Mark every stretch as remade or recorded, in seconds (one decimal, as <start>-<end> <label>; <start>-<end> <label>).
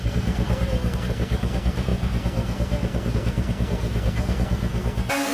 0.0-5.3 remade